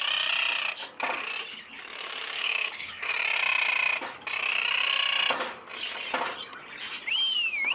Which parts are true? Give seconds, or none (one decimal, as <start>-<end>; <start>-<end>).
0.0-1.5; 3.1-7.7